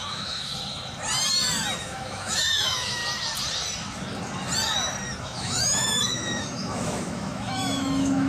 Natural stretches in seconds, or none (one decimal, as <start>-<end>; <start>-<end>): 0.5-1.8; 3.0-5.2